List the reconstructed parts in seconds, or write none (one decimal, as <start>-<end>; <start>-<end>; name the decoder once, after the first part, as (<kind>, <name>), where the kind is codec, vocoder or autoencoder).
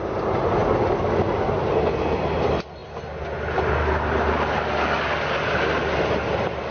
none